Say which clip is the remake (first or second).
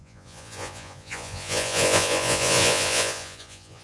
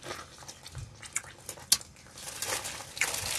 first